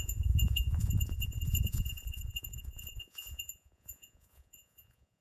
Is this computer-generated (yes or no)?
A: yes